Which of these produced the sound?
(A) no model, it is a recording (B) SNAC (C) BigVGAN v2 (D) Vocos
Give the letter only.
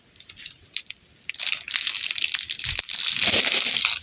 A